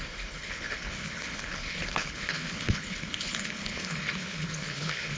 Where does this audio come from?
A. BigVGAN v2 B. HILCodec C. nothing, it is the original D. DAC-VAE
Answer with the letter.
B